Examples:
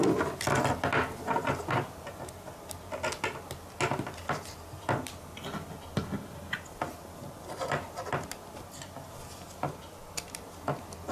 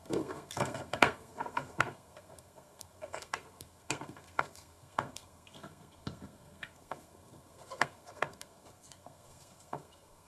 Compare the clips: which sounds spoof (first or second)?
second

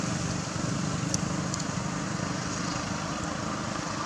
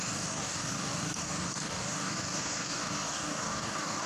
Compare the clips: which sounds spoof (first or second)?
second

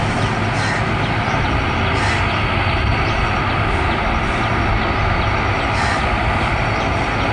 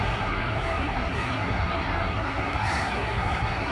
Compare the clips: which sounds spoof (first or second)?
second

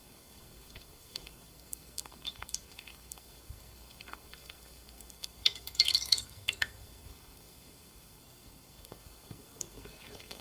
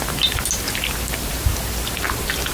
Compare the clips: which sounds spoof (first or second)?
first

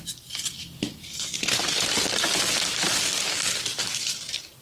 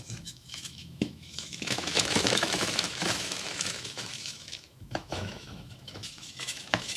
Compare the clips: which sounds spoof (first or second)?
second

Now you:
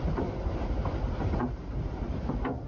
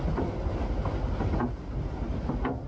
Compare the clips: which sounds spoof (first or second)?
first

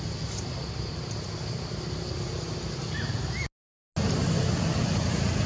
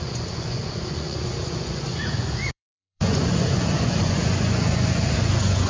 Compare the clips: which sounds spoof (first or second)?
second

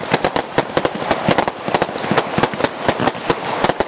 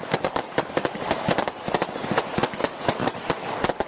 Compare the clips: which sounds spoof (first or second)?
second